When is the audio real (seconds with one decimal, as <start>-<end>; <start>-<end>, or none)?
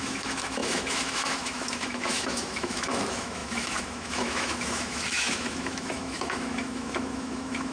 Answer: none